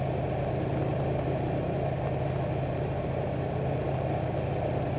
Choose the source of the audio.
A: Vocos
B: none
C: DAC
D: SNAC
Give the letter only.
B